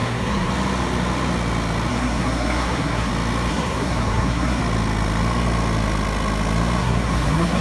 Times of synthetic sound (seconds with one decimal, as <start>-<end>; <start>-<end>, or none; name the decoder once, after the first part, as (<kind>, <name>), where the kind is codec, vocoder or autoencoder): 0.0-0.5 (codec, SNAC); 1.9-3.1; 3.5-4.6; 6.8-7.6